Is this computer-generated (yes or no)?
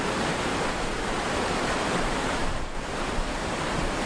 yes